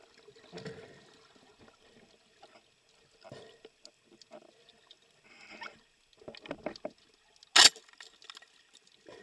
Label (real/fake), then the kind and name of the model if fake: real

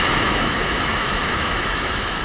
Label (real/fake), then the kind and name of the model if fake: fake, autoencoder, DAC-VAE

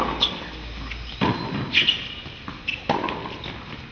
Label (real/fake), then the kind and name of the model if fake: real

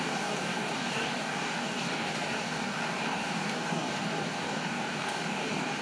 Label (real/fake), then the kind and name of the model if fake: fake, codec, DAC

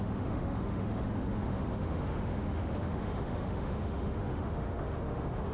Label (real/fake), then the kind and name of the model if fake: fake, autoencoder, DAC-VAE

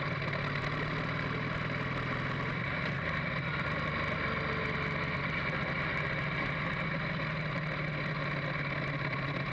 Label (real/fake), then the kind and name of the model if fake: real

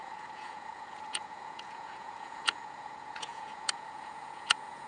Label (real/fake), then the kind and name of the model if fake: fake, vocoder, Vocos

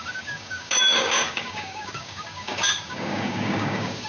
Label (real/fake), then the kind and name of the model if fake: fake, codec, DAC